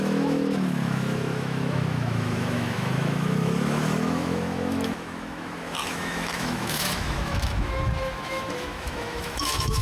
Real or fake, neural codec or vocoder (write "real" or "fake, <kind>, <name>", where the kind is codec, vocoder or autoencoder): fake, autoencoder, DAC-VAE